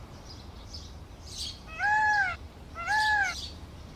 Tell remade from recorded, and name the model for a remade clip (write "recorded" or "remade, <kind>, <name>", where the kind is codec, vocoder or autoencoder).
remade, vocoder, BigVGAN v2